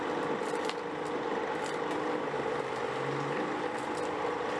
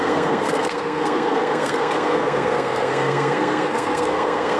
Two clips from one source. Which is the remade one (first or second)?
second